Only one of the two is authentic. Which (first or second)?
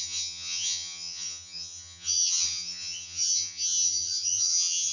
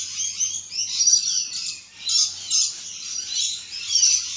second